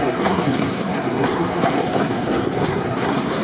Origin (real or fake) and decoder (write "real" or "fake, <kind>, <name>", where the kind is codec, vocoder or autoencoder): fake, codec, SNAC